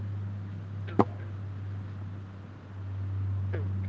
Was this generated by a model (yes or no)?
no